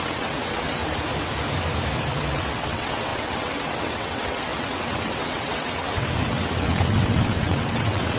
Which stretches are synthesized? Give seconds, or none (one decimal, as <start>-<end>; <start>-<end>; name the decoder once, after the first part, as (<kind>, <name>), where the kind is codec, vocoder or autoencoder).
0.0-0.8 (vocoder, WaveNeXt); 2.2-8.2